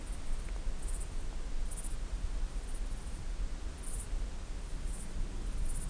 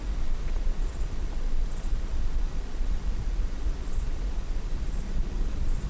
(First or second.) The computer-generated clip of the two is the second